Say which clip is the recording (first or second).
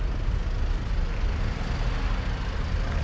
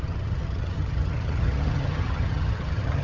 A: first